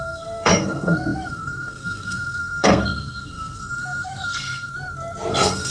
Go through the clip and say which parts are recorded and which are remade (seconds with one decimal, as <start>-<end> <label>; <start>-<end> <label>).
0.0-4.7 remade; 4.7-5.3 recorded; 5.3-5.7 remade

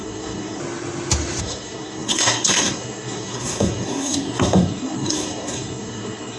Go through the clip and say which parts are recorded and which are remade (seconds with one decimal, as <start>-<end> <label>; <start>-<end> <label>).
0.0-0.6 remade; 0.6-1.4 recorded; 1.4-6.4 remade